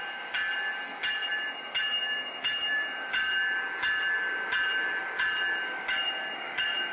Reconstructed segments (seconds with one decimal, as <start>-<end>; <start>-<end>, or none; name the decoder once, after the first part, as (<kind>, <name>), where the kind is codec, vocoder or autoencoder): none

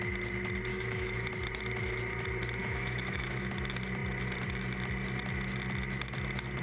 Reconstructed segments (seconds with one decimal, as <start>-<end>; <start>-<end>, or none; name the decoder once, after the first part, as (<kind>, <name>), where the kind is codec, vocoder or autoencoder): 0.7-1.3 (autoencoder, DAC-VAE); 2.6-3.5